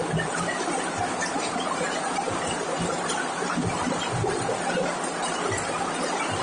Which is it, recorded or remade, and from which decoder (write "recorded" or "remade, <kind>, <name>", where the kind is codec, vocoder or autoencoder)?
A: recorded